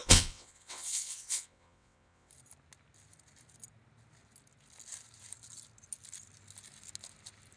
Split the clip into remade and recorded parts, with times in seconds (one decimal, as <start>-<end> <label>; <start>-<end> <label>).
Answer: 0.0-2.3 remade; 2.3-7.6 recorded